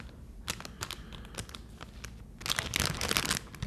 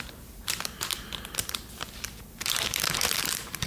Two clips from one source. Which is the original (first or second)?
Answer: first